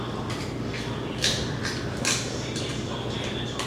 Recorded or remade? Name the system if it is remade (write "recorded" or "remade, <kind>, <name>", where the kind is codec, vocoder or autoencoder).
recorded